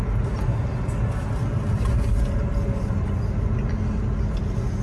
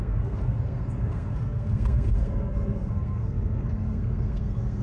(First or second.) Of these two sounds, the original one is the first